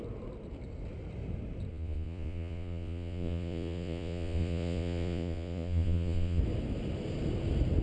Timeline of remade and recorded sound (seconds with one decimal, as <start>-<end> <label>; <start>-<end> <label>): 0.0-1.7 recorded; 1.7-6.4 remade; 6.4-7.8 recorded